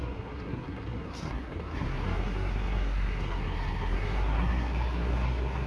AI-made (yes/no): yes